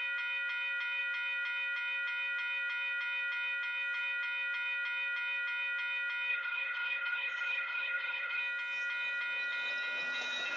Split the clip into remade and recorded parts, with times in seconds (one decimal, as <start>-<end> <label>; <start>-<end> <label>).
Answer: 0.0-6.3 recorded; 6.3-8.4 remade; 8.4-10.6 recorded